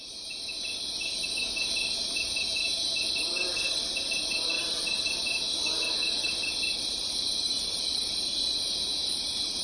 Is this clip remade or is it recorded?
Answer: remade